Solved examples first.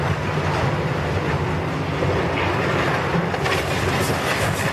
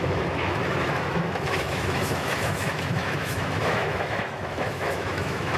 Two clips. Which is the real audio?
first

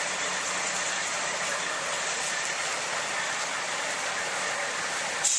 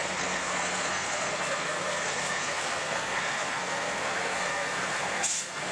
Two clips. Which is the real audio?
first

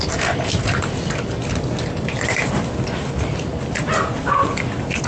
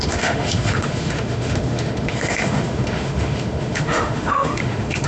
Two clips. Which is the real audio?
first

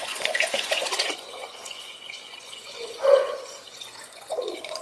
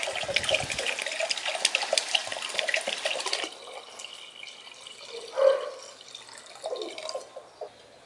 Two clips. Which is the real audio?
second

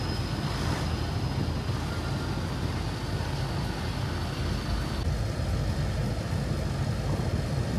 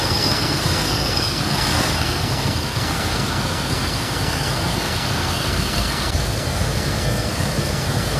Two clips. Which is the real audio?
first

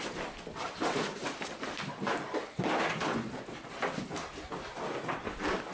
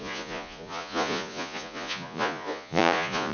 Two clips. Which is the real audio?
first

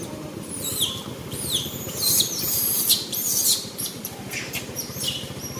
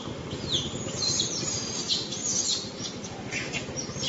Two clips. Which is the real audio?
second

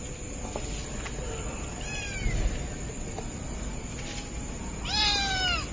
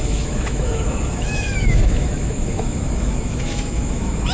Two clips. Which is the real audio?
first